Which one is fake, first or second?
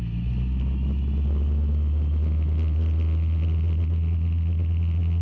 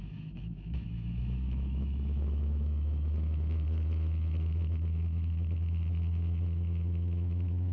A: second